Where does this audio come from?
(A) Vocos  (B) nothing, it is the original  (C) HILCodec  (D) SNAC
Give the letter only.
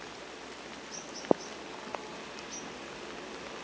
B